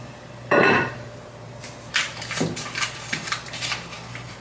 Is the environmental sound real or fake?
fake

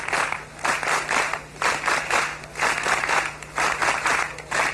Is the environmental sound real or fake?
real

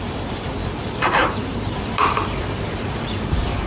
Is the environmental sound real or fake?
fake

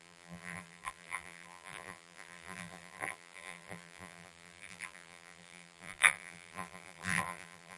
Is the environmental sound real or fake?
fake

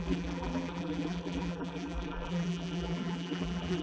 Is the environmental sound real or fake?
fake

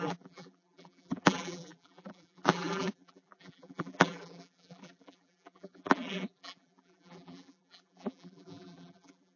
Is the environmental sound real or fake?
fake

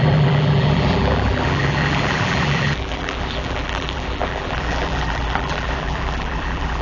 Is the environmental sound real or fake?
fake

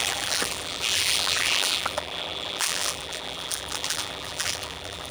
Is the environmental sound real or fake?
fake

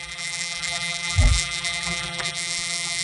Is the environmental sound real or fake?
fake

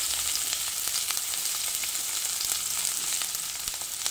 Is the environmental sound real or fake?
real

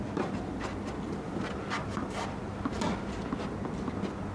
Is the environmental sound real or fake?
real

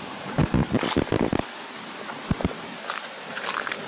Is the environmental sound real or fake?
real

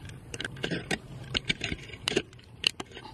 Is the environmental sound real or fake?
fake